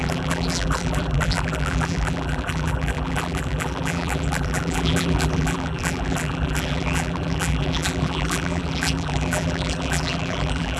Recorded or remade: remade